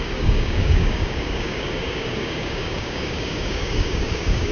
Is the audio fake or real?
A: fake